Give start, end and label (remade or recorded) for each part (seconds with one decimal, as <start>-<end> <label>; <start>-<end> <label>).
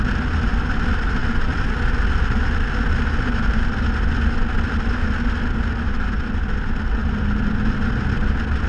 0.0-8.7 recorded